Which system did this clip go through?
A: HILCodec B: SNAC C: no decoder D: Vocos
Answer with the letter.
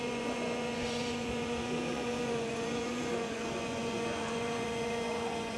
D